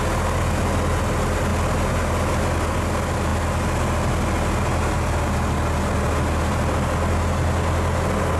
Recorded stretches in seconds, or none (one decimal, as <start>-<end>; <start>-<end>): 0.0-8.4